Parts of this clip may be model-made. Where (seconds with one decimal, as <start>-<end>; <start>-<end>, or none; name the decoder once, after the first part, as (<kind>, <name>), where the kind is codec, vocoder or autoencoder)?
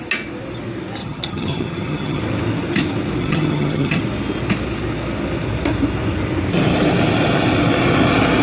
1.0-2.2 (vocoder, HiFi-GAN); 3.2-4.0